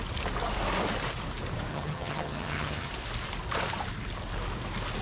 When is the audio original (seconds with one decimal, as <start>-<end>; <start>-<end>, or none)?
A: 0.0-1.7; 2.9-5.0